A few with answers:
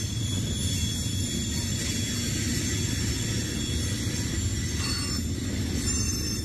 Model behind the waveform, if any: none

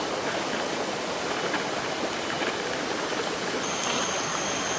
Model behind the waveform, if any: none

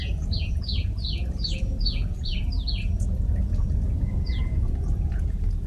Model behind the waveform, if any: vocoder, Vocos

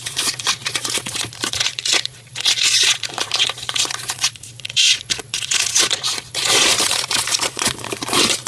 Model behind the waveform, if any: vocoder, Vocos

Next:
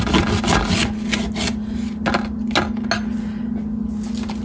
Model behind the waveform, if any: none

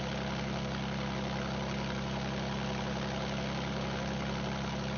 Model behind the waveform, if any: none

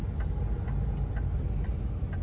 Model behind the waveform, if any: none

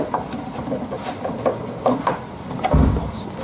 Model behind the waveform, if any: none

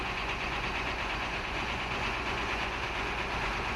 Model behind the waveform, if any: vocoder, Vocos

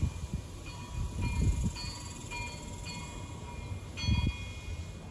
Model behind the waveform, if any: none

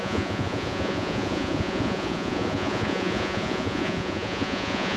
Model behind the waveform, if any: vocoder, Vocos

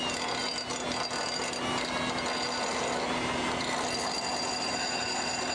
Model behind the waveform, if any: none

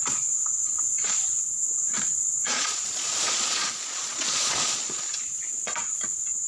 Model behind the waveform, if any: vocoder, Vocos